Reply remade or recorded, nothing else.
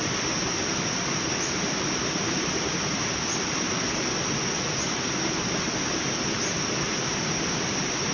recorded